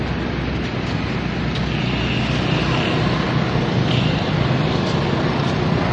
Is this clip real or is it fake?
real